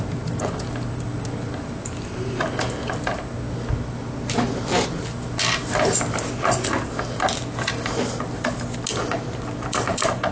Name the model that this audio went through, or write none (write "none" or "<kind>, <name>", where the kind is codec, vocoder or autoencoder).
none